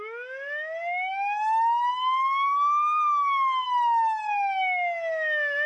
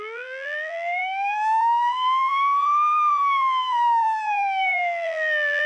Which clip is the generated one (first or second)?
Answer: second